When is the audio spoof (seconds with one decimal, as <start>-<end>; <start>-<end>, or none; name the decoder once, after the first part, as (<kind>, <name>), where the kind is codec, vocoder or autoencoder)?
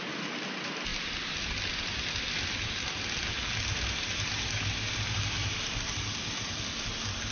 none